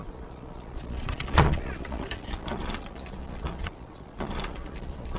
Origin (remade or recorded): remade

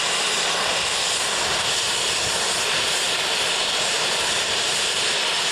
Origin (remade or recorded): recorded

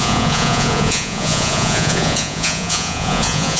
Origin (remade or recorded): remade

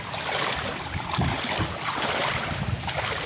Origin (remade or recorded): recorded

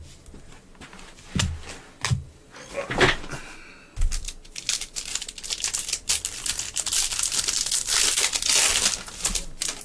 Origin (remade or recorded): recorded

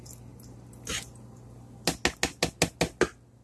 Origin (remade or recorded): recorded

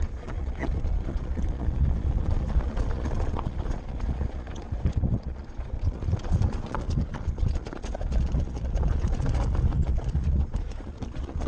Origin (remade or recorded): remade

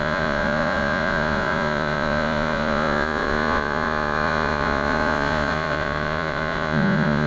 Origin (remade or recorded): remade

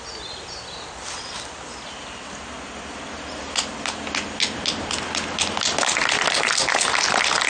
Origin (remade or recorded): recorded